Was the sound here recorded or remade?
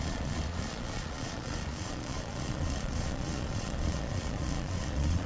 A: remade